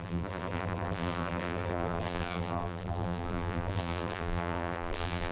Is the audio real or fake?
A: fake